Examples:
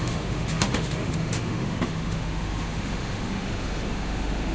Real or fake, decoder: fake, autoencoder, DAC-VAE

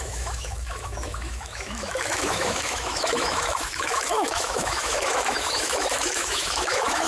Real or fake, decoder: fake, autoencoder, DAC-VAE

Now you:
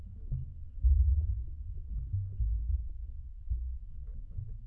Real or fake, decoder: fake, autoencoder, DAC-VAE